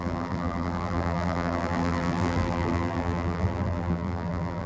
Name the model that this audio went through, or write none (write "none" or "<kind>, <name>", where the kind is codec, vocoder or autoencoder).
vocoder, BigVGAN v2